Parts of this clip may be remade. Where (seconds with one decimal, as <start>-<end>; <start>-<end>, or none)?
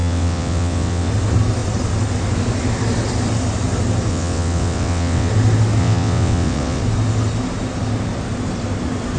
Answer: 0.0-1.1; 4.1-5.3; 5.8-6.8